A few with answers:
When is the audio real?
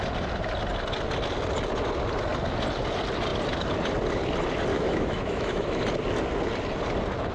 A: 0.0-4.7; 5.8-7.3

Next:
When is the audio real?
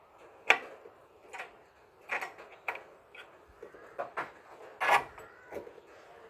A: 0.0-6.3